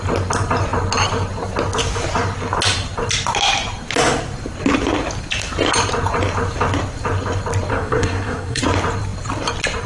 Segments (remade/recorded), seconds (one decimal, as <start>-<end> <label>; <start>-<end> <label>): 0.0-7.7 recorded; 7.7-8.6 remade; 8.6-9.9 recorded